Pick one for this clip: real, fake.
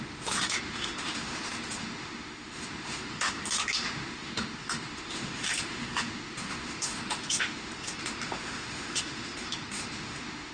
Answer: fake